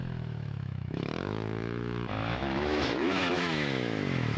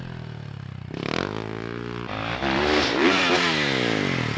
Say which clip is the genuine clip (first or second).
second